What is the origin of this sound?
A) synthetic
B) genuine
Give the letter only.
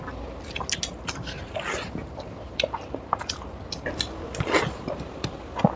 B